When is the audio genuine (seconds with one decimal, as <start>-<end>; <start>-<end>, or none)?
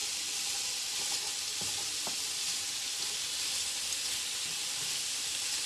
0.0-5.7